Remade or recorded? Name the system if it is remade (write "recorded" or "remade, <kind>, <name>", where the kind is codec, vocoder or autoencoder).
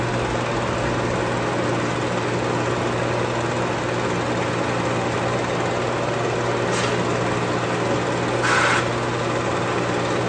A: recorded